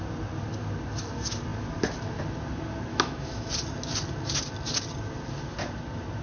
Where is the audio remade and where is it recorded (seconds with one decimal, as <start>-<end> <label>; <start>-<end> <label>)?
0.0-2.9 recorded; 2.9-3.5 remade; 3.5-6.2 recorded